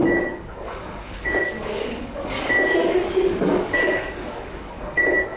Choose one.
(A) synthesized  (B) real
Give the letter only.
A